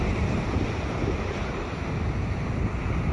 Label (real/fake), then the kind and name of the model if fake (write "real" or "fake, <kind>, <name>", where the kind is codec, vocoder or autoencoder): real